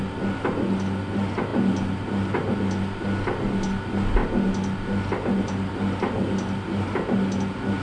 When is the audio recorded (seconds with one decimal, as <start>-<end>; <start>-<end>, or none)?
0.0-7.8